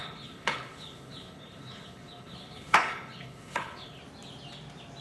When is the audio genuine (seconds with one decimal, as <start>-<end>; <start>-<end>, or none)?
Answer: 4.0-5.0